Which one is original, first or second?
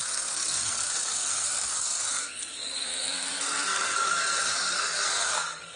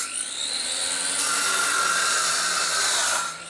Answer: second